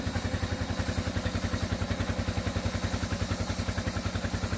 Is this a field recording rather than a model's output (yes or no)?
yes